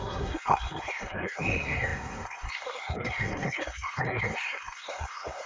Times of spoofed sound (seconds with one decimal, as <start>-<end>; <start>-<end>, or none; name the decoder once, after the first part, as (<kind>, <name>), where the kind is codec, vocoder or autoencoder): 0.0-5.5 (codec, SNAC)